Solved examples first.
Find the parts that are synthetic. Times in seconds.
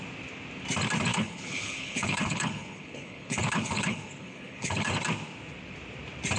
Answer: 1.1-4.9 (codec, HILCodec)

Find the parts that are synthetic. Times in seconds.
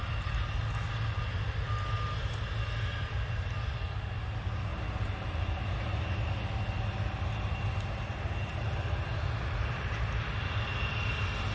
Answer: 4.7-6.0 (vocoder, BigVGAN v2); 8.4-9.8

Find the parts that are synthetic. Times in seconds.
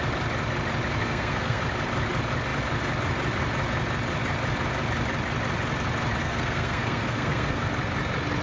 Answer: 1.0-1.6 (codec, SNAC); 6.2-7.7